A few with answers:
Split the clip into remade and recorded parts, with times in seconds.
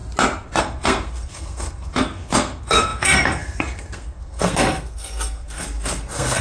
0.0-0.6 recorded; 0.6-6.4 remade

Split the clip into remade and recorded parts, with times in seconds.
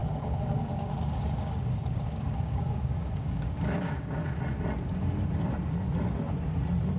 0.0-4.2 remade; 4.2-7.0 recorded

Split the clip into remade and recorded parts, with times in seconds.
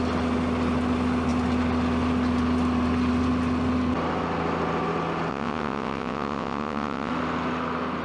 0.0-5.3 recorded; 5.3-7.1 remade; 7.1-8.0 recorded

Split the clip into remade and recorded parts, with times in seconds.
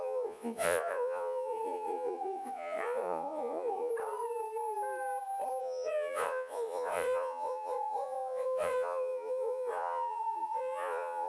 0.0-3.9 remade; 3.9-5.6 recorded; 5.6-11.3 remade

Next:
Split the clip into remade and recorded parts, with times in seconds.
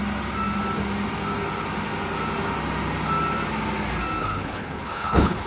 0.0-4.2 recorded; 4.2-5.5 remade